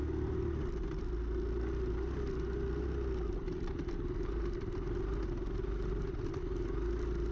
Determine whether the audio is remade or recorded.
recorded